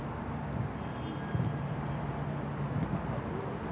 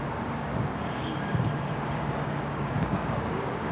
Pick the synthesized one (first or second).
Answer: second